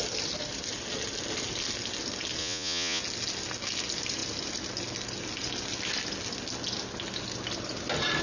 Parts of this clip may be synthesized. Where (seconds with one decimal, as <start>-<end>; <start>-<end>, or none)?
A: 2.4-3.0